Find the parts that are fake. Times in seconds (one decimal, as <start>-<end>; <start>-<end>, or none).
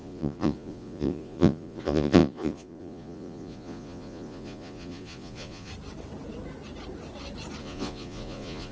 0.0-5.7; 7.6-8.7